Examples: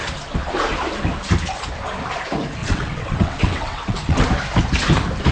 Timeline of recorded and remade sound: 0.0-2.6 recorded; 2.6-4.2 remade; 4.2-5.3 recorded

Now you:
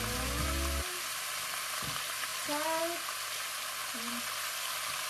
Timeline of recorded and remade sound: 0.0-3.8 recorded; 3.8-4.3 remade; 4.3-5.1 recorded

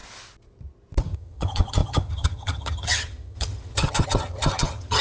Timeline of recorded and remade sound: 0.0-1.0 recorded; 1.0-5.0 remade

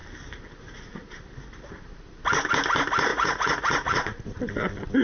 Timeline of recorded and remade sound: 0.0-3.1 recorded; 3.1-4.4 remade; 4.4-5.0 recorded

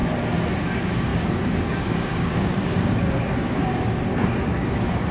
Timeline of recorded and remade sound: 0.0-0.5 recorded; 0.5-5.1 remade

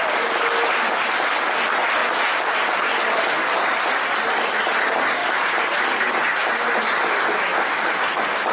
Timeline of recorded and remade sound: 0.0-8.5 recorded